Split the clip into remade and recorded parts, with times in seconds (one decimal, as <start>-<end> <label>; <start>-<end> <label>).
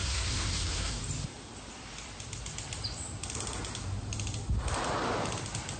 0.0-1.0 remade; 1.0-5.8 recorded